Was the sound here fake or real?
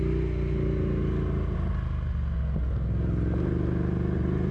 real